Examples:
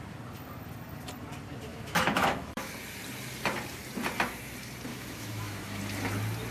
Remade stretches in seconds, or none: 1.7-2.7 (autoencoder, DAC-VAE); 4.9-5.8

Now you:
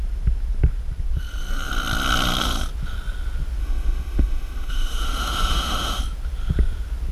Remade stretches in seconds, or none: 3.6-6.0 (autoencoder, DAC-VAE)